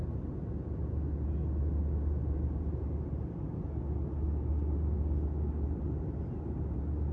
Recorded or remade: recorded